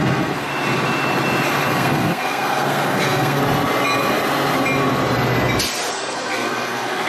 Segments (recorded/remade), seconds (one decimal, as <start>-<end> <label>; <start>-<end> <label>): 0.0-0.5 remade; 0.5-1.7 recorded; 1.7-3.4 remade; 3.4-5.9 recorded; 5.9-7.1 remade